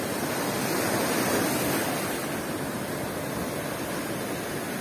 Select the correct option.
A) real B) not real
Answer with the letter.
A